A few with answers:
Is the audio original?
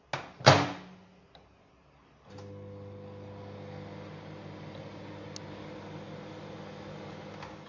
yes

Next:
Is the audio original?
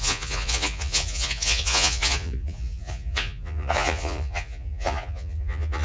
no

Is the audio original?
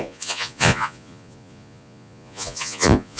no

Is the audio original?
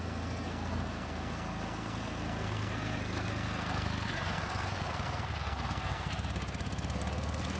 no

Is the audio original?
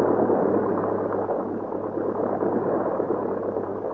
yes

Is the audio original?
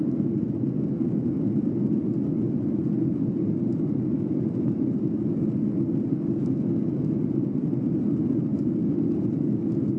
yes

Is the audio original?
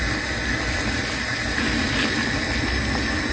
yes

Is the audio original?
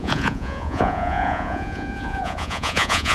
no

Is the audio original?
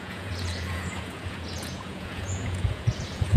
no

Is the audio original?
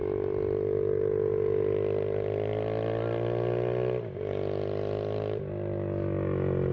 yes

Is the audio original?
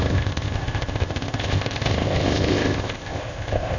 no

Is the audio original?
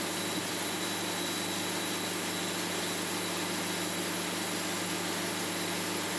yes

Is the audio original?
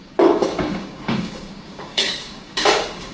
no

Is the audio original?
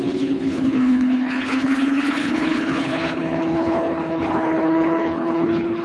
no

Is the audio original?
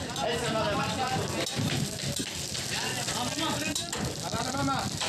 yes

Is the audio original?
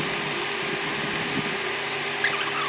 yes